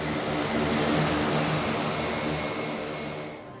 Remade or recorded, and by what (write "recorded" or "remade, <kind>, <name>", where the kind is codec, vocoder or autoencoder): recorded